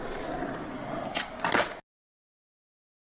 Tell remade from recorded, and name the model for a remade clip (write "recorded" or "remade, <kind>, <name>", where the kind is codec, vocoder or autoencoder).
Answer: recorded